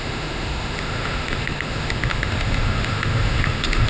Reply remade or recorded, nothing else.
remade